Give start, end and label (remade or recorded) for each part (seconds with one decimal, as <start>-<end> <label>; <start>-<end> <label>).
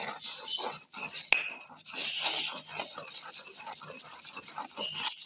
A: 0.0-2.0 recorded; 2.0-5.3 remade